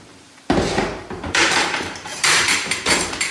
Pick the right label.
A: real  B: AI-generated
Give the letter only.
B